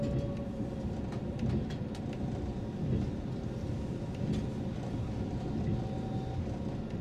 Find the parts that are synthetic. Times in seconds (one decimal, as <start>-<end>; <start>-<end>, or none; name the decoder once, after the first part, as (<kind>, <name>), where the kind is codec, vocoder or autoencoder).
none